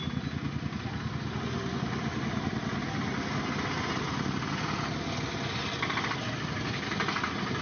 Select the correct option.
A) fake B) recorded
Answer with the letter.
B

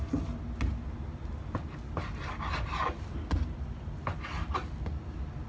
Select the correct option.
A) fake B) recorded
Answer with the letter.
B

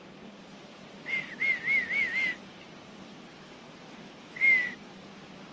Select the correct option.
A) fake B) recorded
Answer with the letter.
B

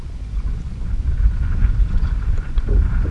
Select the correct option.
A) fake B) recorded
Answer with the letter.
A